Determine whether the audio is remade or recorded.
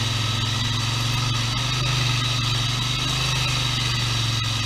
recorded